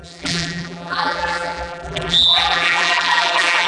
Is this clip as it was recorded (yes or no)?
no